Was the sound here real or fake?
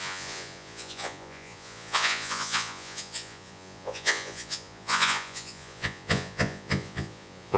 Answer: fake